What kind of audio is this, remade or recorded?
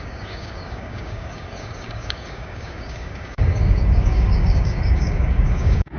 remade